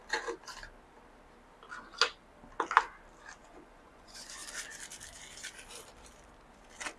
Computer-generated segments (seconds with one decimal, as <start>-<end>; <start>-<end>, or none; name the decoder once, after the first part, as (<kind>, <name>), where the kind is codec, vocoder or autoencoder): 3.4-4.4 (vocoder, Vocos)